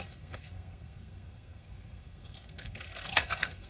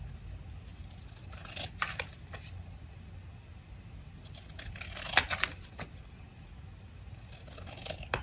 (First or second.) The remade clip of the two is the first